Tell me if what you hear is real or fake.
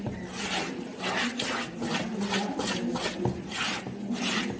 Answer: real